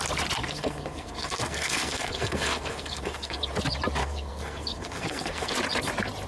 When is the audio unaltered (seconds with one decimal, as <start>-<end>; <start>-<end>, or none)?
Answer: 0.0-0.4; 3.4-4.0; 5.5-6.3

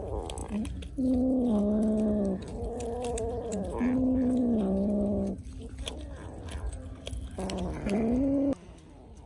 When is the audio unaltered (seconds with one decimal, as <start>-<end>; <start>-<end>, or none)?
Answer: 0.0-9.3

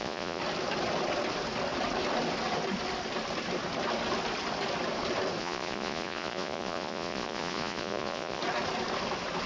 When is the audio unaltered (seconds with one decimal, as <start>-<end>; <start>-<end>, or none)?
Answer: 0.4-5.4; 8.4-9.5

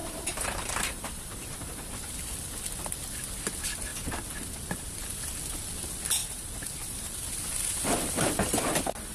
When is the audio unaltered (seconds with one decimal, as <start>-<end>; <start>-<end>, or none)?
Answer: 1.4-6.2; 7.2-9.1

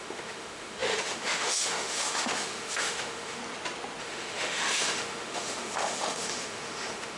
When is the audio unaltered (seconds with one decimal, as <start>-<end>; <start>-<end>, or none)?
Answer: 3.4-4.0

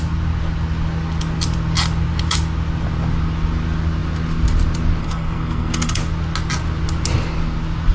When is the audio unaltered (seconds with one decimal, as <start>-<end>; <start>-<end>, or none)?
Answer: 0.0-5.0; 6.0-7.9